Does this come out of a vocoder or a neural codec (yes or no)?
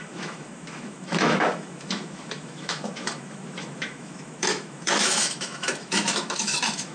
yes